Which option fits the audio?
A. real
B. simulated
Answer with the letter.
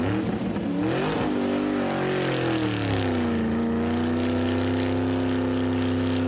A